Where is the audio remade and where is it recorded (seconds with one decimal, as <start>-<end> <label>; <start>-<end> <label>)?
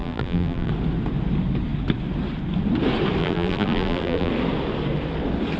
0.0-0.7 remade; 0.7-3.2 recorded; 3.2-4.3 remade; 4.3-5.6 recorded